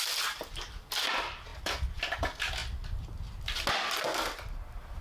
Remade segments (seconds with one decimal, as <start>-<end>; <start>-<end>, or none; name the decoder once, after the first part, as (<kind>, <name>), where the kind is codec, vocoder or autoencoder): none